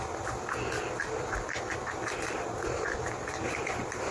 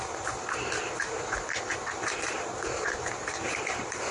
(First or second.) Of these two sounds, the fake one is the second